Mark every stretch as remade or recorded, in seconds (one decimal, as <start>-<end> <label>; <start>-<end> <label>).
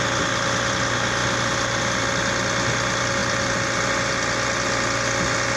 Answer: 0.0-5.6 recorded